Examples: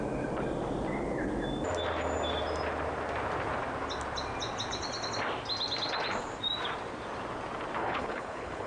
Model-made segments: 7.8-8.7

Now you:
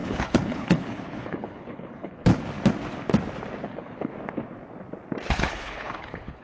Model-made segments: 0.0-2.3; 3.6-4.1; 5.3-6.4

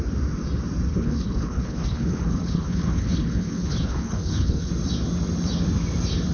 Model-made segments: 0.9-4.7

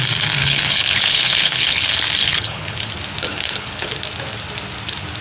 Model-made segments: 0.4-1.8; 2.2-2.9; 3.3-3.9

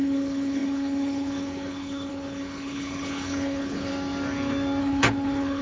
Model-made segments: 0.0-3.9; 4.8-5.6

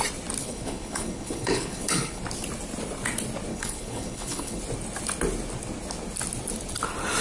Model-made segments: 0.4-2.2; 3.5-4.6